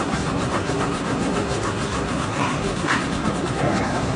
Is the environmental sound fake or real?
fake